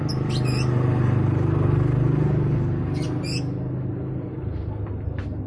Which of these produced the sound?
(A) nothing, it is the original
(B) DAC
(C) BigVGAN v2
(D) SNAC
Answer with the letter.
A